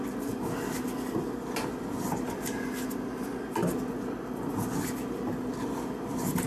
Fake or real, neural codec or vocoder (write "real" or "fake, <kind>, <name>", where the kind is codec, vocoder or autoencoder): real